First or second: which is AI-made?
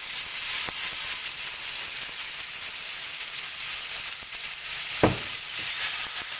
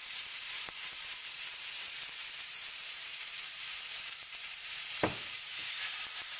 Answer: second